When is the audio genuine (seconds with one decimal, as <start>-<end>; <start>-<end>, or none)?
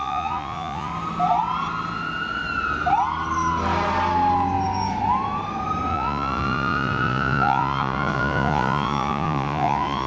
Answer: 0.9-5.9